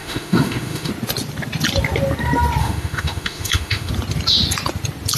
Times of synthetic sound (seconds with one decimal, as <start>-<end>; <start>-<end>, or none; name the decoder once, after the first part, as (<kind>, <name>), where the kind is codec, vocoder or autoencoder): 0.0-0.9 (autoencoder, DAC-VAE); 2.6-3.9